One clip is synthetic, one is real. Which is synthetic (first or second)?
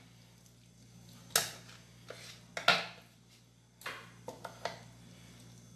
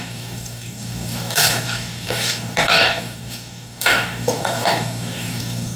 second